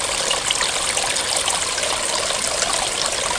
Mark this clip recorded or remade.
recorded